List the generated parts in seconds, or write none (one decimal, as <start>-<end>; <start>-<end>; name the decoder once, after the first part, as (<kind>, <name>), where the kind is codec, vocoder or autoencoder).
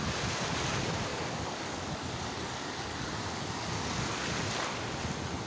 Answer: 1.1-4.0 (codec, DAC)